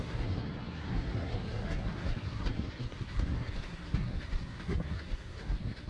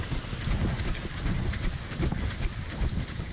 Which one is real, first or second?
second